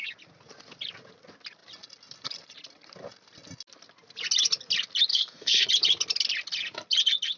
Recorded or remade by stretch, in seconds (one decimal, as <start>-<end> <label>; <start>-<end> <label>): 0.0-5.1 recorded; 5.1-5.7 remade; 5.7-7.4 recorded